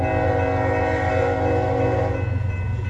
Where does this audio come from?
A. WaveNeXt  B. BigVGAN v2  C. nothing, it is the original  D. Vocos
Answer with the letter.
C